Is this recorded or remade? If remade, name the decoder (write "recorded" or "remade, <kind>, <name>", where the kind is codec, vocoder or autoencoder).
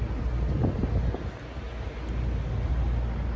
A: recorded